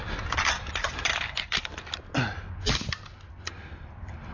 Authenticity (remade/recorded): recorded